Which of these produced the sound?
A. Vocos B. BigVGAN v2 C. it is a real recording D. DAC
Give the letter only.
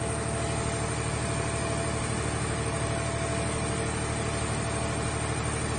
C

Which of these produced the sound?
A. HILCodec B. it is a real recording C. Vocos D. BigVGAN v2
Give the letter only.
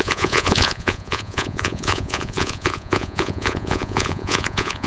C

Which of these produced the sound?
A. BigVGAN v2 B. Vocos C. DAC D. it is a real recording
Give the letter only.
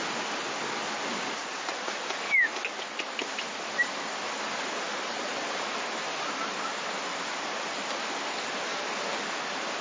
D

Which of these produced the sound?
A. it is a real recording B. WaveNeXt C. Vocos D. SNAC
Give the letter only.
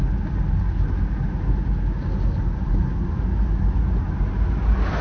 A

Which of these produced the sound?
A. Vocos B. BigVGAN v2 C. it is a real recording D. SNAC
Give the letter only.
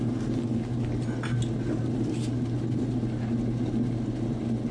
C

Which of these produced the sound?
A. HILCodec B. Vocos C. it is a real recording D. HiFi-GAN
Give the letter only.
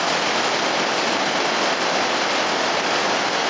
C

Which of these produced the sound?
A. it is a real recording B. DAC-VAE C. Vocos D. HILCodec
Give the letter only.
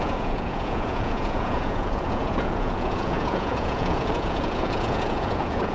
C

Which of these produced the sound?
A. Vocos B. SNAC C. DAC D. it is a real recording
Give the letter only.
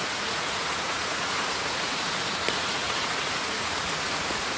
A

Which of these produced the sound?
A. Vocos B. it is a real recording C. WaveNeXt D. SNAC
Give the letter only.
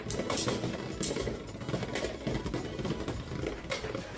B